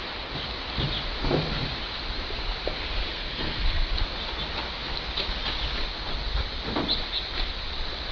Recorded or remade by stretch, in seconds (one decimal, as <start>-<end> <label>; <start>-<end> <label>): 0.0-3.1 recorded; 3.1-3.9 remade; 3.9-8.1 recorded